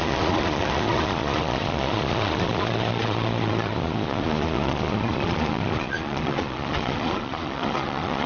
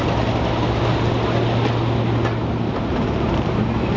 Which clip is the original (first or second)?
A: second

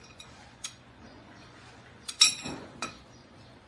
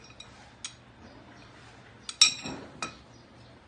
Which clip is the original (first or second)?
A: second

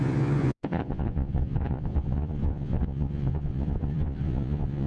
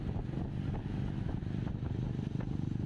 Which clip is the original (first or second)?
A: second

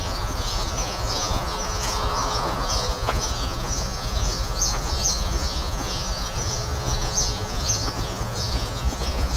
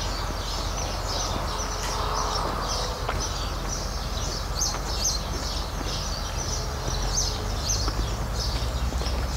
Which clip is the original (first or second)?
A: second